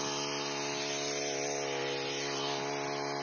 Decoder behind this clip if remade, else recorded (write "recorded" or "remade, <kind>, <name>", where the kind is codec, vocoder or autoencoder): recorded